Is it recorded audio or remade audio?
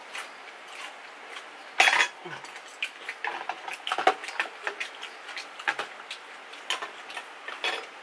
recorded